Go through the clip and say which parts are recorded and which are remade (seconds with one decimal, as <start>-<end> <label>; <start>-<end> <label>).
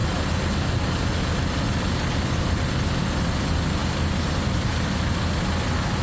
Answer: 0.0-6.0 recorded